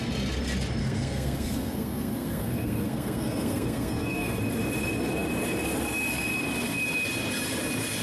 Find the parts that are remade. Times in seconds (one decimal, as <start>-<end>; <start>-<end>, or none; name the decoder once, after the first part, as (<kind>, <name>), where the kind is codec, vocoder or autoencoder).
0.8-4.4 (codec, SNAC)